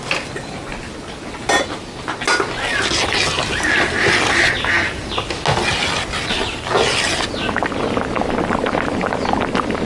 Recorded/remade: recorded